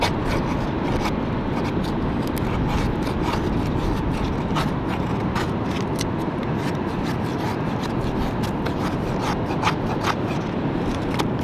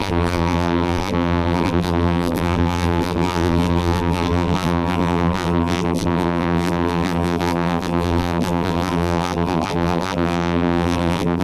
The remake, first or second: second